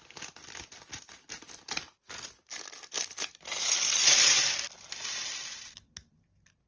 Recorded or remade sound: recorded